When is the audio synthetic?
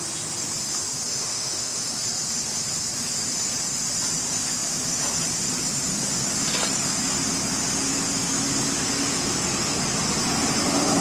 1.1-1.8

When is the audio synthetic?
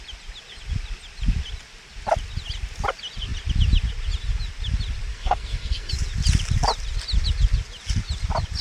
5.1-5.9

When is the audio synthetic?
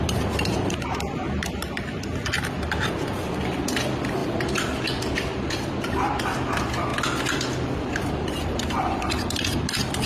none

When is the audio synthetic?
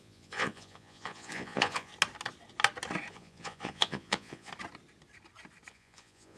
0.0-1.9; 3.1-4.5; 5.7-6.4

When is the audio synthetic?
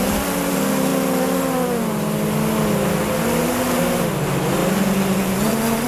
none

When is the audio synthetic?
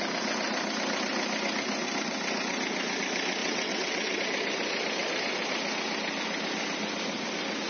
3.4-4.2